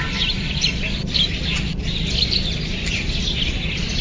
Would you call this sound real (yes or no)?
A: yes